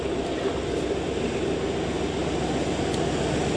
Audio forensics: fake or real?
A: real